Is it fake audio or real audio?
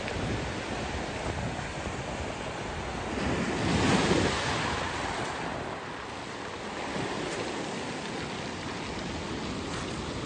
real